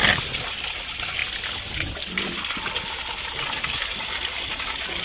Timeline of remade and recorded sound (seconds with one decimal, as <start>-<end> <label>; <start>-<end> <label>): 0.0-5.0 recorded

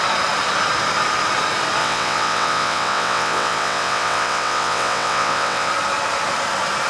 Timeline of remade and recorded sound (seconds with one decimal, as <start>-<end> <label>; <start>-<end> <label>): 0.0-1.8 recorded; 1.8-5.7 remade; 5.7-6.9 recorded

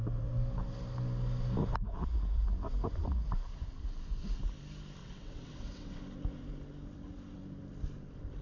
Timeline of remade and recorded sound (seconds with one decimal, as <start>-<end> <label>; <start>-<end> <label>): 0.0-5.0 recorded; 5.0-6.0 remade; 6.0-8.4 recorded